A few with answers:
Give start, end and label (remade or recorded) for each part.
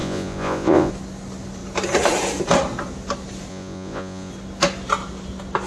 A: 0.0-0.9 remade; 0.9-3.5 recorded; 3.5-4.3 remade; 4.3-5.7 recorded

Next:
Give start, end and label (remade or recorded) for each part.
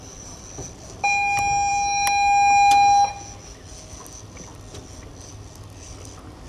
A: 0.0-6.5 recorded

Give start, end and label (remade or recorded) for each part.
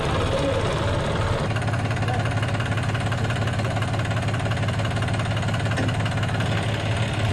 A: 0.0-7.3 recorded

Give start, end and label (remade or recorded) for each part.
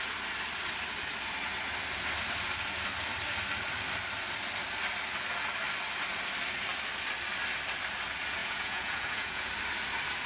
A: 0.0-8.4 recorded; 8.4-9.5 remade; 9.5-10.3 recorded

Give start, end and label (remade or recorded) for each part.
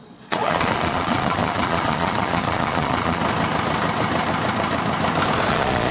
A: 0.0-3.2 remade; 3.2-5.5 recorded; 5.5-5.9 remade